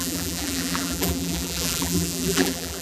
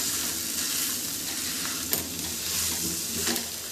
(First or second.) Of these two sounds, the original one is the second